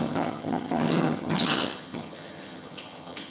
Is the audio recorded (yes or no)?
no